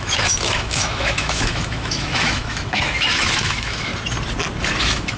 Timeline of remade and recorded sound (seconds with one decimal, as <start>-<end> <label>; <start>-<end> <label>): 0.0-3.9 remade; 3.9-4.8 recorded; 4.8-5.2 remade